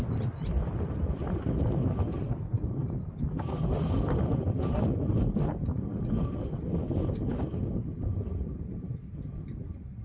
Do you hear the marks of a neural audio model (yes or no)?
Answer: no